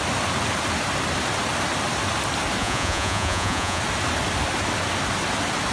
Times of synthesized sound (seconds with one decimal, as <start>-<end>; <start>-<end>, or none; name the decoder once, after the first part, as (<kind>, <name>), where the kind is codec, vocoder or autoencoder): 2.6-3.8 (vocoder, Vocos)